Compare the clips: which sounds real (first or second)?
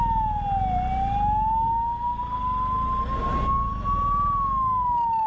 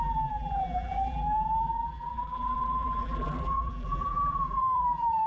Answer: first